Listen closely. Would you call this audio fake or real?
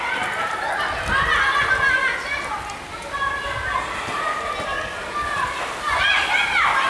real